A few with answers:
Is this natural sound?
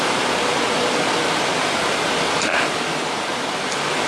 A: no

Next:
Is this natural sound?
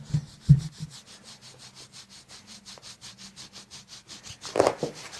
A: yes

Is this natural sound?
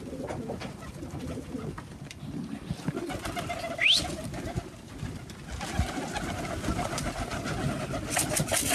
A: yes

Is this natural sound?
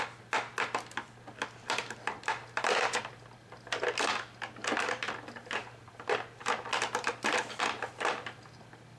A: yes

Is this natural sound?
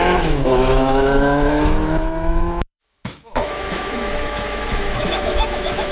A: no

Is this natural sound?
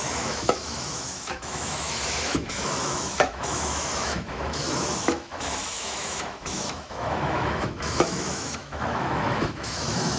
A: no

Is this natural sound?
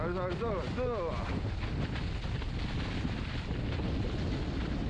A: yes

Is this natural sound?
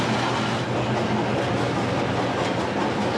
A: yes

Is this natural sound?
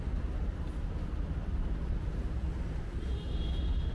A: yes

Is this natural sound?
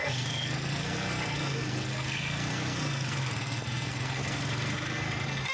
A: no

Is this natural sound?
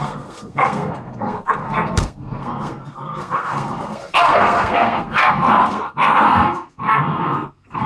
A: no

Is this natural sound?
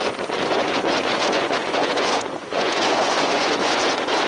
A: no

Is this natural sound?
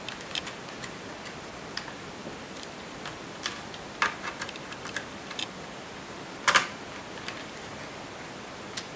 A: no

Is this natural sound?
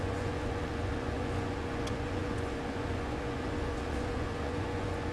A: no